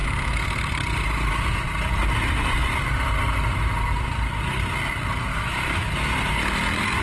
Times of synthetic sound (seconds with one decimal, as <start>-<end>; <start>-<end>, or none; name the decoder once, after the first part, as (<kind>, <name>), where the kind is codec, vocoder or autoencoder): 5.3-5.9 (autoencoder, DAC-VAE)